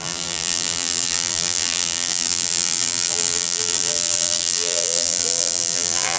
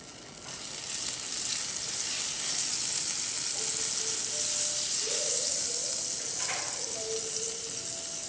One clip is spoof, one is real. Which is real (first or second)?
second